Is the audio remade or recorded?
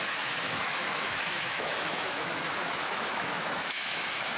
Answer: remade